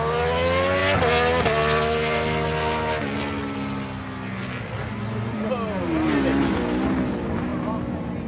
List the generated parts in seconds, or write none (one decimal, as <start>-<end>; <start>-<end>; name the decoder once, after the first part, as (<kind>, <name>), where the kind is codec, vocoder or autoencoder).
none